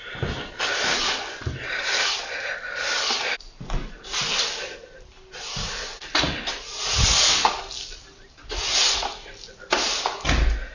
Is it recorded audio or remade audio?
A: recorded